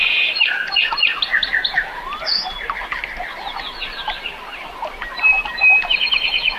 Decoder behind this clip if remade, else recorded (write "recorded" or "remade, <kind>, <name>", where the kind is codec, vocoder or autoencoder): recorded